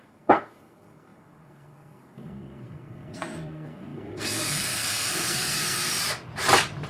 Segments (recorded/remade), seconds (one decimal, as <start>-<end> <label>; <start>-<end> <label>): 0.0-5.9 remade; 5.9-6.9 recorded

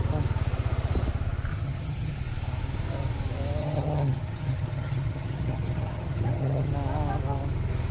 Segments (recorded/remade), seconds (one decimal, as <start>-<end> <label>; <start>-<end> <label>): 0.0-1.5 recorded; 1.5-2.1 remade; 2.1-3.6 recorded; 3.6-6.7 remade; 6.7-7.9 recorded

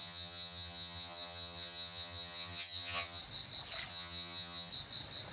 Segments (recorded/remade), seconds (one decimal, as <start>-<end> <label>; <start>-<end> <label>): 0.0-3.2 remade; 3.2-3.9 recorded; 3.9-4.7 remade; 4.7-5.3 recorded

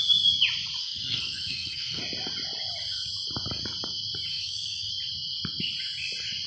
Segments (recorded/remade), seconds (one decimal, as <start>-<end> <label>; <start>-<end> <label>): 0.0-0.8 recorded; 0.8-2.0 remade; 2.0-4.3 recorded; 4.3-4.9 remade; 4.9-6.5 recorded

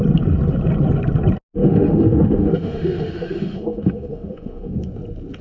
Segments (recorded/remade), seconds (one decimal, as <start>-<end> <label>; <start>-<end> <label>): 0.0-1.6 recorded; 1.6-4.8 remade; 4.8-5.4 recorded

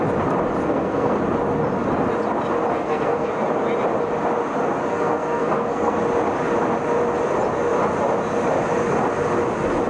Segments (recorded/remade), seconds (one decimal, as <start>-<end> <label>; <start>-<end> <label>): 0.0-0.6 recorded; 0.6-1.2 remade; 1.2-2.7 recorded; 2.7-3.3 remade; 3.3-4.9 recorded; 4.9-6.0 remade; 6.0-9.9 recorded

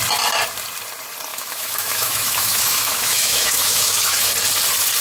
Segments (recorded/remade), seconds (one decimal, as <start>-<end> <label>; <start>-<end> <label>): 0.0-1.3 recorded; 1.3-4.3 remade; 4.3-5.0 recorded